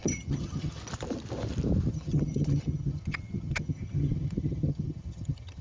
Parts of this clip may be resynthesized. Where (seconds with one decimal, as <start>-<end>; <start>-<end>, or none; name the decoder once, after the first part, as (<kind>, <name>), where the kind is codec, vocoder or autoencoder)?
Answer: 0.0-0.8 (vocoder, HiFi-GAN); 1.9-5.6

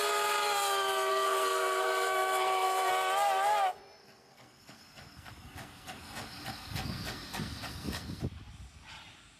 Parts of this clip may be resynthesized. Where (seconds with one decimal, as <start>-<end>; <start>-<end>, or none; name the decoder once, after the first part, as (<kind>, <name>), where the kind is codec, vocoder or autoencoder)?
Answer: 1.1-2.9 (codec, SNAC); 4.0-8.2

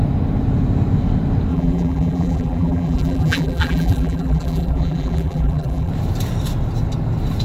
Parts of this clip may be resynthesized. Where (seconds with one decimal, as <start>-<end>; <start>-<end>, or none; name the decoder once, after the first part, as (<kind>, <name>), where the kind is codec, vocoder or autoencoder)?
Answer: 1.5-5.9 (vocoder, BigVGAN v2)

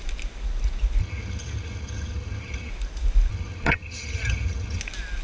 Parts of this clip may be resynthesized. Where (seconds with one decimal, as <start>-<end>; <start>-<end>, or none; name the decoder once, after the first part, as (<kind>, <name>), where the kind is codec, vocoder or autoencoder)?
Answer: 1.0-2.7 (vocoder, HiFi-GAN); 3.3-4.8

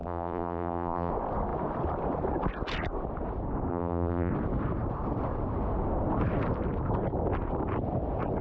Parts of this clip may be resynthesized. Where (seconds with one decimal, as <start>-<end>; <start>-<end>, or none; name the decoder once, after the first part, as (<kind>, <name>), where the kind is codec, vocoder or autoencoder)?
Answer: 0.0-1.1 (vocoder, BigVGAN v2); 3.7-4.3

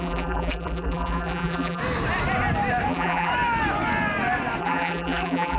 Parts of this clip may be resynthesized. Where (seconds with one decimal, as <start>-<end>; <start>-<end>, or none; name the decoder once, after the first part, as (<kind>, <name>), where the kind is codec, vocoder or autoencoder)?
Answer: 0.0-1.8 (vocoder, BigVGAN v2); 2.9-3.3; 4.6-5.6

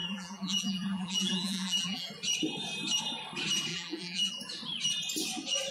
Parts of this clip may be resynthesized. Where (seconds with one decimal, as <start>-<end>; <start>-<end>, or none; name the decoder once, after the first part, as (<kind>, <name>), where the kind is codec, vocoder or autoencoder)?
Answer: 0.0-2.1 (vocoder, BigVGAN v2); 3.7-4.3

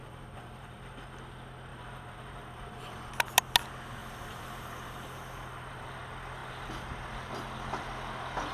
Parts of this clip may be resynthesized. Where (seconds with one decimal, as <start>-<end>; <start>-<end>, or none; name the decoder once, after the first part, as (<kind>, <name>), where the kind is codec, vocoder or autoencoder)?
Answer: 0.0-1.2 (vocoder, BigVGAN v2); 1.7-3.1; 4.0-6.0